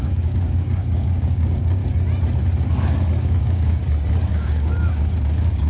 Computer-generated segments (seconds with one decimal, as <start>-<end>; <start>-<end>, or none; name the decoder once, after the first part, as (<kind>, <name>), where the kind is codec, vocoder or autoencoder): 0.0-1.8 (codec, DAC); 3.2-3.8; 4.3-5.7